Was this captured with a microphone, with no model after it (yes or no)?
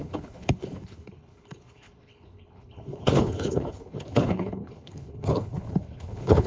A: no